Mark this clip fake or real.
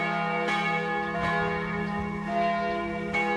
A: real